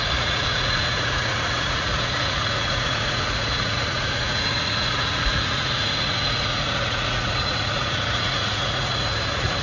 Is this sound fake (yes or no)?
yes